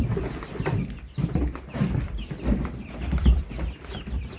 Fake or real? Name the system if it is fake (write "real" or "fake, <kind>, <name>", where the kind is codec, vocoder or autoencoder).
fake, vocoder, BigVGAN v2